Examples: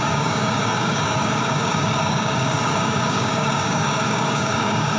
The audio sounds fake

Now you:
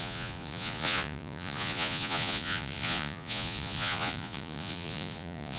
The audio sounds fake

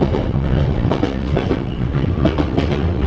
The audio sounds fake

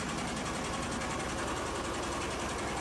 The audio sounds real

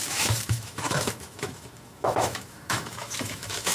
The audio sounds fake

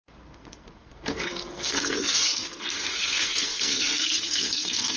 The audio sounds fake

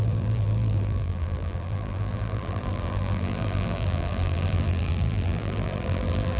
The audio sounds fake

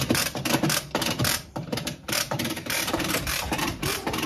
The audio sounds fake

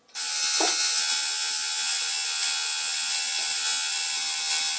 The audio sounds real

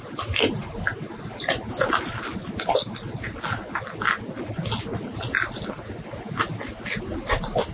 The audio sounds real